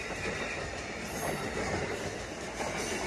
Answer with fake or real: real